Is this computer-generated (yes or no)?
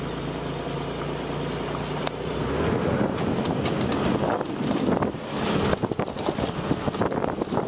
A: no